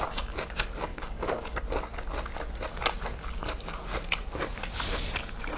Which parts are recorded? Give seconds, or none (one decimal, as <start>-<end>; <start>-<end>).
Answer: 0.0-0.9; 1.6-5.6